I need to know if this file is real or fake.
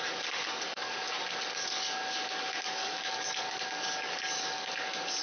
fake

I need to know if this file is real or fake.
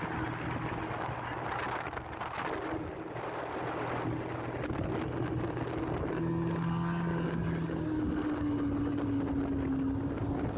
real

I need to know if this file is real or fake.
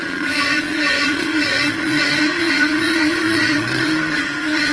fake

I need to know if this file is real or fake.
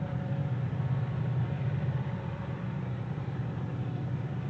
fake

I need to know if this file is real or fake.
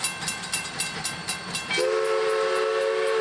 real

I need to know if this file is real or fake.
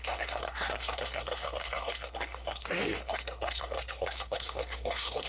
fake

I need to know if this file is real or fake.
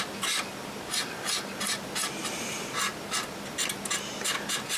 real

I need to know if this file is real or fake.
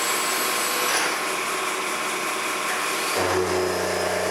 real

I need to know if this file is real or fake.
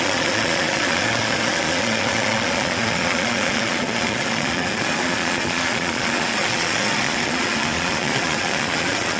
fake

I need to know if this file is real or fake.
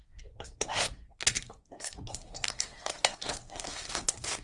fake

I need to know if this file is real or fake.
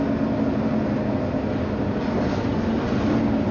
real